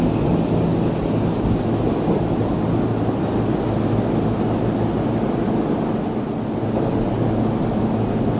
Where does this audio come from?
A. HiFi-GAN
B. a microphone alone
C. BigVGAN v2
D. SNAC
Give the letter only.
B